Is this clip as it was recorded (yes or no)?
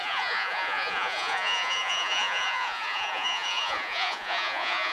no